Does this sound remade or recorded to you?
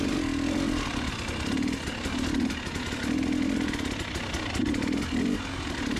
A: recorded